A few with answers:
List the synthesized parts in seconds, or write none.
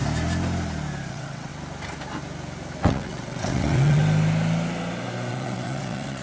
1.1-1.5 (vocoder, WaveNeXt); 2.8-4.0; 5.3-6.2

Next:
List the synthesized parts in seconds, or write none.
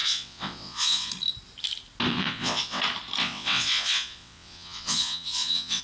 0.0-1.1 (vocoder, WaveNeXt); 2.1-2.8; 3.2-5.8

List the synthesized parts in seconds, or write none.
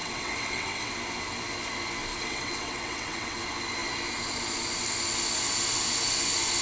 0.0-0.9 (vocoder, WaveNeXt); 2.1-3.4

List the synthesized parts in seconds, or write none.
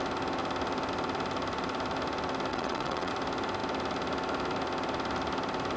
2.5-3.1 (vocoder, WaveNeXt)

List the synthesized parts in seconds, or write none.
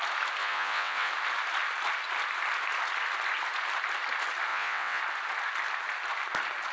0.4-1.1 (vocoder, WaveNeXt); 4.5-5.0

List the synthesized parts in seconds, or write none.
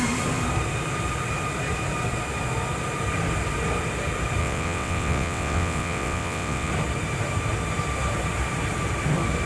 4.4-6.7 (vocoder, WaveNeXt)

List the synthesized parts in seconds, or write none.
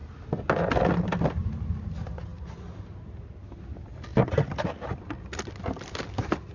none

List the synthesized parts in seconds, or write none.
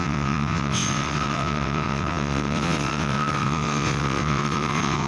0.0-5.1 (vocoder, WaveNeXt)